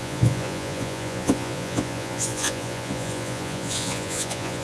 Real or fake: fake